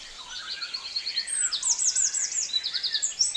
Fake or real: real